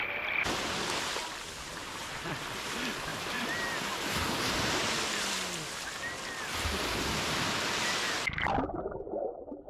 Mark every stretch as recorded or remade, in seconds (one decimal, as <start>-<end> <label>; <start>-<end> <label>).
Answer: 0.0-1.8 recorded; 1.8-2.4 remade; 2.4-9.7 recorded